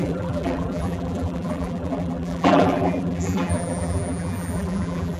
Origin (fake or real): fake